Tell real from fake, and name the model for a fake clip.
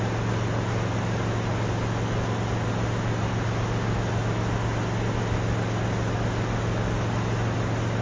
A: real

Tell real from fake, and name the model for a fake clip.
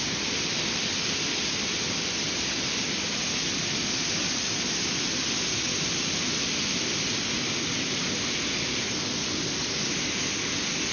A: real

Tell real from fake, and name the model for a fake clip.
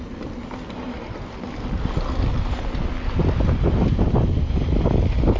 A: real